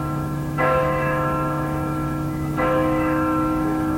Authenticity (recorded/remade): remade